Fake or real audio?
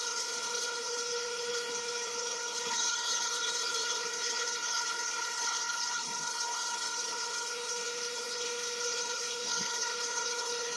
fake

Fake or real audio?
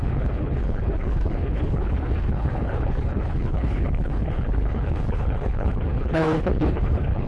fake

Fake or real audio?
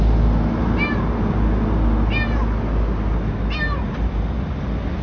real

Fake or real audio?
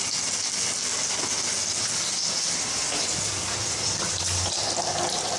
real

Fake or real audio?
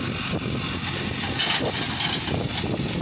real